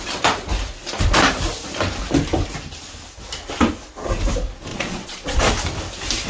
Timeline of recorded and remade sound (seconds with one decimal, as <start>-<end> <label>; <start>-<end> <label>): 0.0-4.7 recorded; 4.7-5.5 remade; 5.5-6.3 recorded